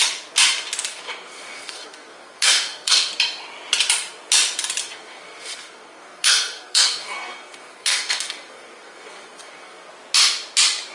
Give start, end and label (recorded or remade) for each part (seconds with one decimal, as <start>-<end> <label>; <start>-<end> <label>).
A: 0.0-0.9 recorded; 0.9-3.1 remade; 3.1-4.8 recorded; 4.8-9.9 remade; 9.9-10.9 recorded